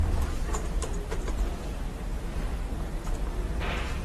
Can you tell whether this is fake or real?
fake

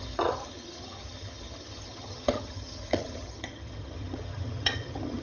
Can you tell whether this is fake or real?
fake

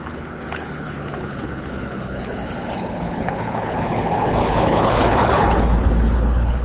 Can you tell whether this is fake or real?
fake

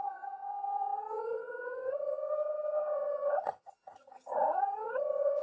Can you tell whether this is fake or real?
fake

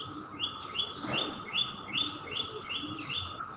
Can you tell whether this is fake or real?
real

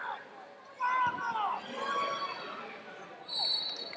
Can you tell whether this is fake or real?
real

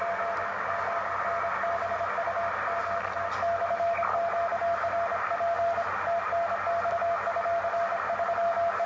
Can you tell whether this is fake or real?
real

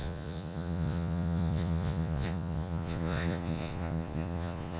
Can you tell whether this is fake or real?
fake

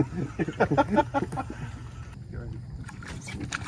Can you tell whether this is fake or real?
real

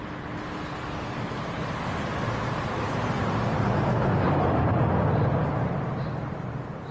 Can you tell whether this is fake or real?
real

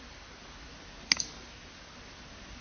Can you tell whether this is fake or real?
real